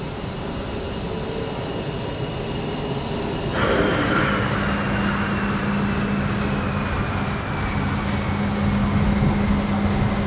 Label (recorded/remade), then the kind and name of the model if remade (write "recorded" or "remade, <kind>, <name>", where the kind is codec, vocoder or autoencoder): recorded